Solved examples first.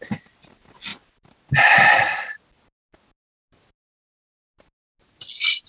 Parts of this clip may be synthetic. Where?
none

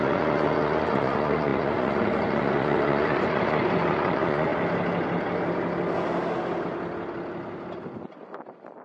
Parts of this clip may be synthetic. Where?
0.0-4.5 (vocoder, Vocos)

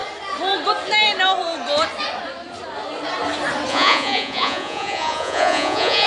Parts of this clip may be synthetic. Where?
3.7-6.1 (vocoder, Vocos)

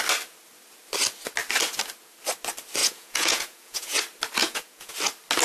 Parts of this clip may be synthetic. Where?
2.8-4.0 (vocoder, Vocos); 4.4-4.9

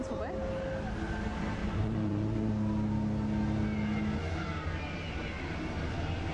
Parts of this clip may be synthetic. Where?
1.6-2.5 (vocoder, Vocos)

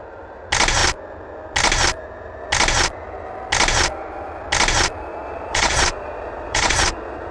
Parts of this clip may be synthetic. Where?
5.1-7.3 (vocoder, Vocos)

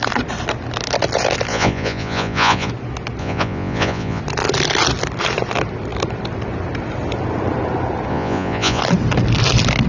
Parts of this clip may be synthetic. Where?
1.5-2.7 (vocoder, Vocos); 3.2-4.2; 8.1-8.8